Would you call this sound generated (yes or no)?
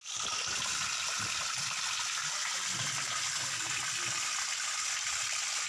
no